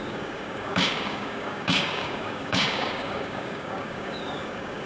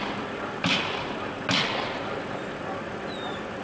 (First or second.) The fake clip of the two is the first